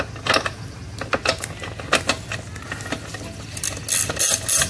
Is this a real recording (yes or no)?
yes